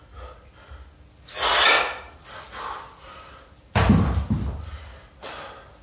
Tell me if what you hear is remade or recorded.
recorded